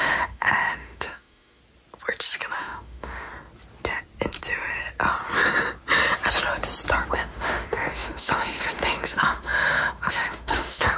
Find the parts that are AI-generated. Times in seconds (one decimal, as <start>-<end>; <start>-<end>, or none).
0.0-1.6; 2.6-3.3; 7.1-11.0